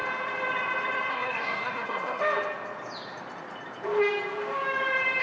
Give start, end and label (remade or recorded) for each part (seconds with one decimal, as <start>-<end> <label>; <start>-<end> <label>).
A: 0.0-1.1 recorded; 1.1-2.2 remade; 2.2-5.2 recorded